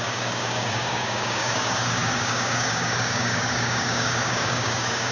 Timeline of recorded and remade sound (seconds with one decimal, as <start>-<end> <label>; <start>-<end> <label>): 0.0-5.1 remade